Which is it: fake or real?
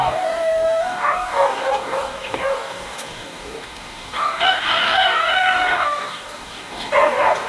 fake